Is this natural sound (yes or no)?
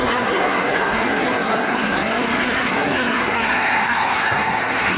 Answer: no